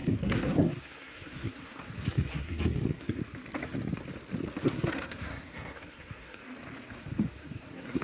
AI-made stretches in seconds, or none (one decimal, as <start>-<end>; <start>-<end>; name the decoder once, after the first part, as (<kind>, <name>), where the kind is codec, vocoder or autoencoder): 0.0-3.2 (codec, SNAC); 4.6-6.4; 7.0-8.0

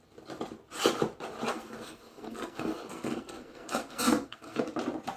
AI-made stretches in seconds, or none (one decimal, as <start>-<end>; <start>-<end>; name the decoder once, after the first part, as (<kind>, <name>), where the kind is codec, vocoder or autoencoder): 1.5-4.6 (codec, SNAC)

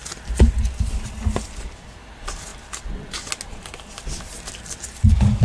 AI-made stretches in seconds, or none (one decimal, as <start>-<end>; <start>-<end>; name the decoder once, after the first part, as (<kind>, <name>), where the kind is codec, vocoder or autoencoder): none

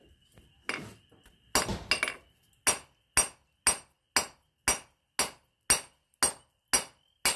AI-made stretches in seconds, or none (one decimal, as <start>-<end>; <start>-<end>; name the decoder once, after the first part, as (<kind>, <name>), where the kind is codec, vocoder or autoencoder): none

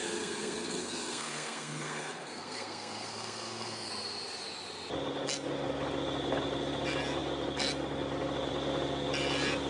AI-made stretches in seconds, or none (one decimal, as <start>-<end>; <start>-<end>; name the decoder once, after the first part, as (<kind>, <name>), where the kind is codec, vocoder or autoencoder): 0.0-3.9 (codec, SNAC)

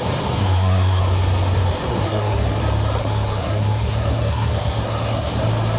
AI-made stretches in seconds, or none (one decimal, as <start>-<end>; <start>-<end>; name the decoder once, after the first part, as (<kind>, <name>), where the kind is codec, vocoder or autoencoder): 0.4-1.0 (codec, SNAC); 1.9-2.6; 3.0-5.3

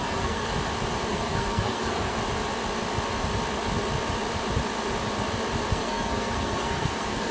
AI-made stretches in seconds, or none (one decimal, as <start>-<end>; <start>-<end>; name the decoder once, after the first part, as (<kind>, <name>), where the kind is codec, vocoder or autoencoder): 0.0-0.5 (codec, SNAC); 1.1-2.2; 5.7-7.3

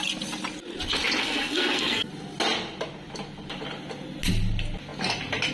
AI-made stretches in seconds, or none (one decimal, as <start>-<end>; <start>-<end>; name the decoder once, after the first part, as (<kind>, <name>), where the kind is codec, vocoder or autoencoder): 1.2-2.1 (codec, SNAC)